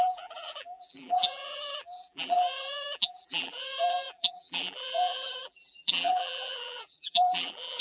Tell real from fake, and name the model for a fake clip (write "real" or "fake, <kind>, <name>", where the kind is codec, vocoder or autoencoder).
fake, vocoder, BigVGAN v2